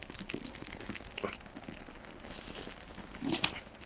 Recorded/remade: recorded